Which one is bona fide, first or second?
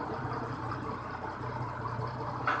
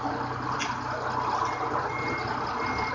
second